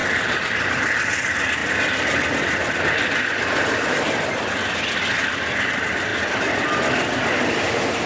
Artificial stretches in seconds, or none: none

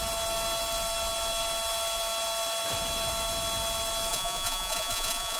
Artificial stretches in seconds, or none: 4.1-5.4 (vocoder, Vocos)